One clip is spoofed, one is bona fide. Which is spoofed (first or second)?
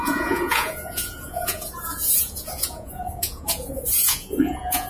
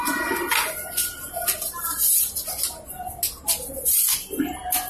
first